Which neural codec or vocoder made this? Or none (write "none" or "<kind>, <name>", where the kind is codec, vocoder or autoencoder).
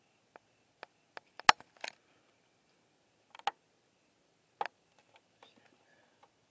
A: none